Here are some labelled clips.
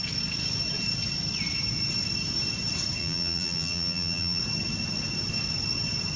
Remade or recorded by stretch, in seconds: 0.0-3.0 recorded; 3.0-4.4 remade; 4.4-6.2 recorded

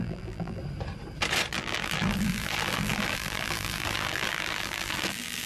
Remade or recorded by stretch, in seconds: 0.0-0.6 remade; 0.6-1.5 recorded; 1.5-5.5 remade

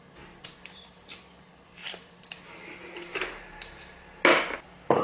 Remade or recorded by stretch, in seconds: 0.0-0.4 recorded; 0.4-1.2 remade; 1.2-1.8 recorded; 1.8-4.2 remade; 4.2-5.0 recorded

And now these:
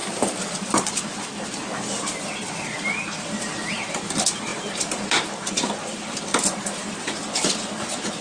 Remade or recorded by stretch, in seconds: 0.0-8.2 recorded

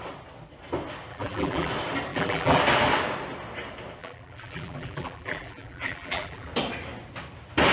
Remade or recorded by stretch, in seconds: 0.0-1.1 recorded; 1.1-1.7 remade; 1.7-2.1 recorded; 2.1-2.6 remade; 2.6-4.0 recorded; 4.0-6.5 remade; 6.5-7.7 recorded

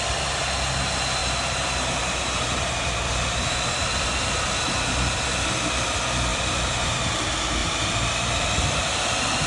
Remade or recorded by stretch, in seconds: 0.0-1.2 recorded; 1.2-4.6 remade; 4.6-6.3 recorded; 6.3-7.0 remade; 7.0-7.6 recorded; 7.6-8.4 remade; 8.4-9.5 recorded

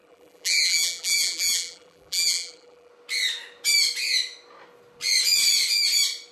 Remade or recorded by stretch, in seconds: 0.0-2.9 remade; 2.9-6.3 recorded

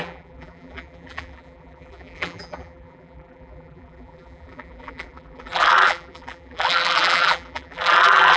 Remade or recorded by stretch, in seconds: 0.0-8.4 remade